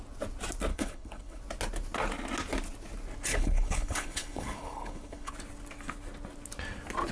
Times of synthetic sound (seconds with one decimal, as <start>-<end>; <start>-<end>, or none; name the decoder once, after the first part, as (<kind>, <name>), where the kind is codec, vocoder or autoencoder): 0.7-1.4 (codec, HILCodec); 3.3-5.3